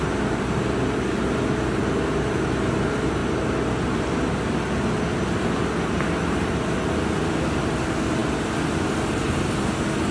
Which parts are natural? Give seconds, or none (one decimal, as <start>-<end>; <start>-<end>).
0.0-10.1